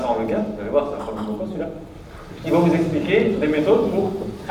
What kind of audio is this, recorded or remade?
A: recorded